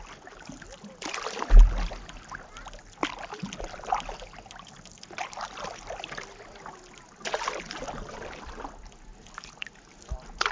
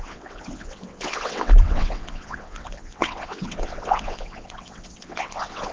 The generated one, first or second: second